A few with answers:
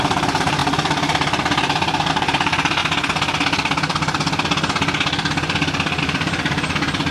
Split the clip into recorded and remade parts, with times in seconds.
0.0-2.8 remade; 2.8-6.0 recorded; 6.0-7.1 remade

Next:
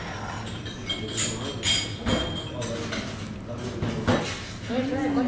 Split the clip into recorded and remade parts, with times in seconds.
0.0-5.3 recorded

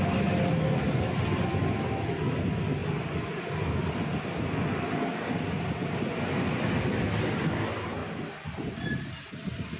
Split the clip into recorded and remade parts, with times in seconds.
0.0-9.8 recorded

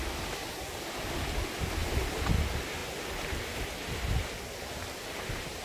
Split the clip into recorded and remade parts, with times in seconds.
0.0-5.6 recorded